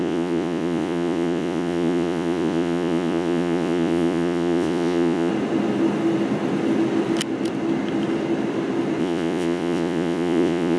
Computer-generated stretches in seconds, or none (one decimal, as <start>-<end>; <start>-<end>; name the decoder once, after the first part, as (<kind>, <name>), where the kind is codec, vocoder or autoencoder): 0.0-5.3 (vocoder, Vocos); 9.0-10.8